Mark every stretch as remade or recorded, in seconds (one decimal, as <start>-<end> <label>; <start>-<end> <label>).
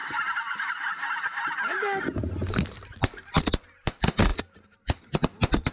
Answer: 0.0-3.4 remade; 3.4-4.3 recorded; 4.3-5.2 remade; 5.2-5.7 recorded